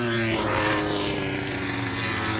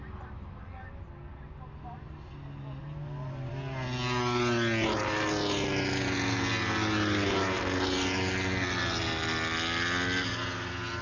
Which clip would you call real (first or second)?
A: second